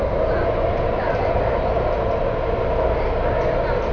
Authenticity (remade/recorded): recorded